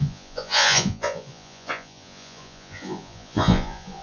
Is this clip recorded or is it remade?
remade